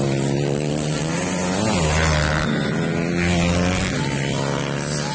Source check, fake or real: real